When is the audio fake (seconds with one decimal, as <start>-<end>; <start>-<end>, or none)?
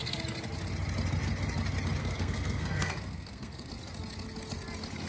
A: 2.0-3.7